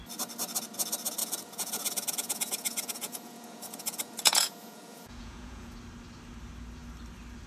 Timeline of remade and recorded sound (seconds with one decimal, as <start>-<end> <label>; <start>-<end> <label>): 0.0-1.2 recorded; 1.2-5.7 remade; 5.7-7.5 recorded

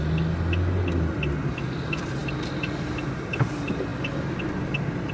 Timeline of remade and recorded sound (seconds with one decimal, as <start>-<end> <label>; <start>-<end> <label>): 0.0-5.1 recorded

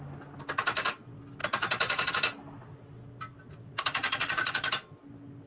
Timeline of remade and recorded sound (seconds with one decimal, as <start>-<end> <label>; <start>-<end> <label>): 0.0-4.0 recorded; 4.0-4.7 remade; 4.7-5.5 recorded